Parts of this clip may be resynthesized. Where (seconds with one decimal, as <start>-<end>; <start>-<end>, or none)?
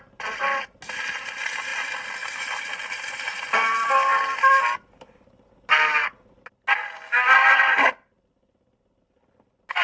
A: none